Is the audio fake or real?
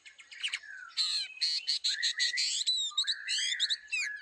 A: real